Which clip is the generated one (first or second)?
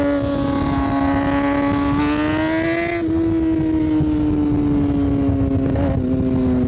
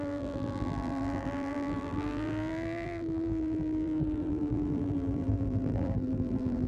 second